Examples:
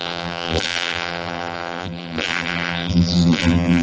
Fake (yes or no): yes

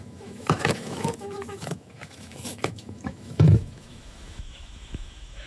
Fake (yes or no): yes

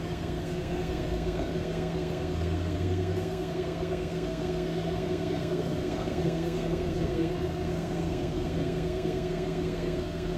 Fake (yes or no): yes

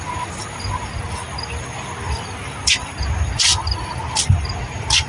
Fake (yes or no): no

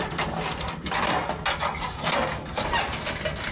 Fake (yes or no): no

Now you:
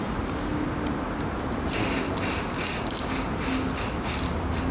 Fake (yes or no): no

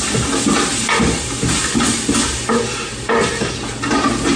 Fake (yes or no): no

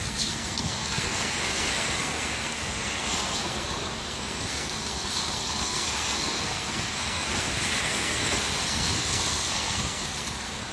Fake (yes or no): yes